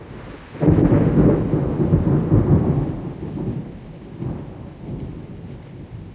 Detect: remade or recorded recorded